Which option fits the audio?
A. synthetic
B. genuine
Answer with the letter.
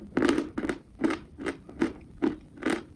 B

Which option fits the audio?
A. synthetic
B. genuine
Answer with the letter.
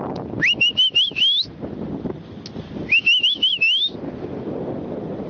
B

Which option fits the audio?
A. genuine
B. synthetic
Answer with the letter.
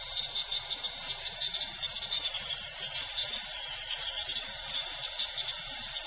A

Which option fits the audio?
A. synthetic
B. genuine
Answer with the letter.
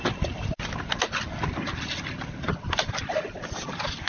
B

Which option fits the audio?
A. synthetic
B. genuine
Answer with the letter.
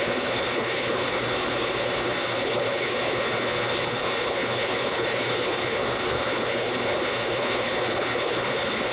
A